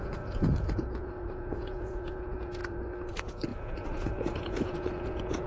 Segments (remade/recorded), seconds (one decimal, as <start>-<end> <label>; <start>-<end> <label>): 0.0-2.6 remade; 2.6-3.1 recorded; 3.1-5.5 remade